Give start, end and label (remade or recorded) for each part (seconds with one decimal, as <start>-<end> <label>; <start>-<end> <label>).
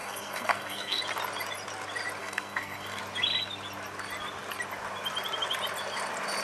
0.0-1.0 remade; 1.0-2.2 recorded; 2.2-3.0 remade; 3.0-6.4 recorded